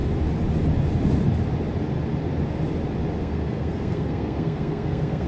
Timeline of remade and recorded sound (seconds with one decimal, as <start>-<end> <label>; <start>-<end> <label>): 0.0-3.2 recorded; 3.2-5.3 remade